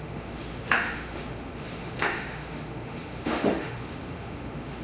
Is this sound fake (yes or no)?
yes